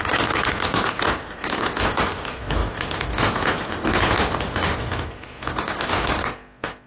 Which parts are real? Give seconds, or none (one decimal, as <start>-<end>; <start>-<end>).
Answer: 0.0-6.9